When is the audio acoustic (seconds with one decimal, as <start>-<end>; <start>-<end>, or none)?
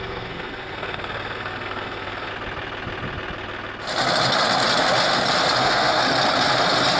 2.3-5.6; 6.0-7.0